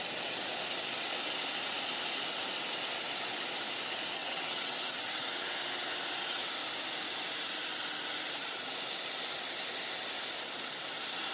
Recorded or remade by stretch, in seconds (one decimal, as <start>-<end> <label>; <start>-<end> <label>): 0.0-4.2 recorded; 4.2-5.5 remade; 5.5-11.3 recorded